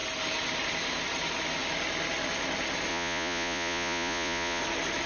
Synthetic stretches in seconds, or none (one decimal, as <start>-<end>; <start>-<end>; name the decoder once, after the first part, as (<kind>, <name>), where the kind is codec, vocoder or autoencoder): 2.9-4.6 (vocoder, Vocos)